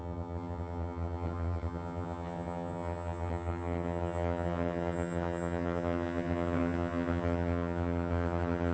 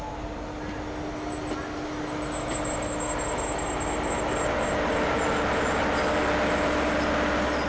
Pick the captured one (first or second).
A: second